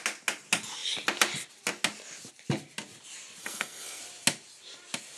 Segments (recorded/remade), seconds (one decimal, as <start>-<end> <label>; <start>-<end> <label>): 0.0-3.4 recorded; 3.4-4.0 remade; 4.0-5.2 recorded